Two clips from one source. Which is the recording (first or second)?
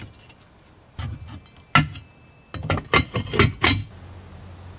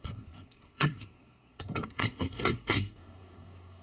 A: first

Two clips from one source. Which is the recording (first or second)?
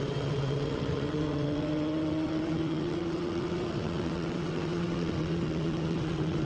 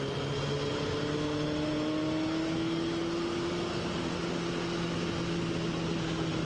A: second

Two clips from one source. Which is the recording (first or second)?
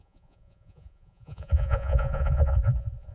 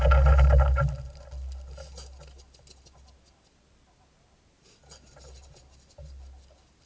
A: second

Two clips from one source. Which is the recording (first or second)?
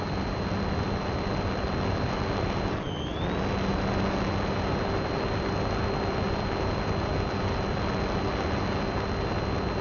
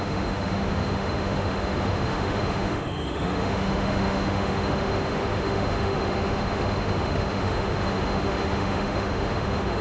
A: first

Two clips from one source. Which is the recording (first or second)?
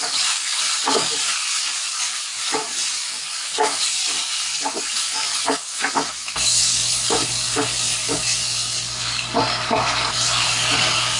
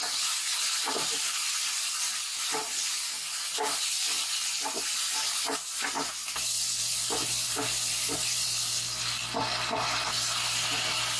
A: second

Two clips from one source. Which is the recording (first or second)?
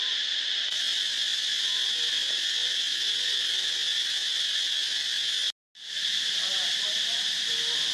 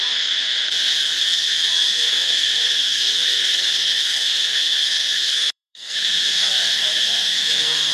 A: first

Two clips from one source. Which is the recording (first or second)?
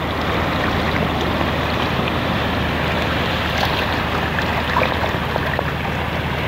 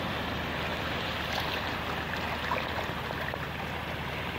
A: second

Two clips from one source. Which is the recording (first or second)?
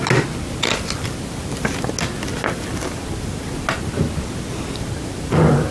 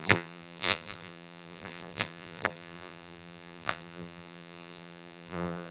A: first